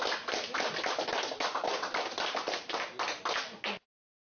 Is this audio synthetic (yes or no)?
no